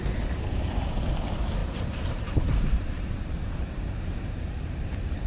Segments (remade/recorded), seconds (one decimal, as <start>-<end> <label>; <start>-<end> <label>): 0.0-1.6 recorded; 1.6-4.8 remade; 4.8-5.3 recorded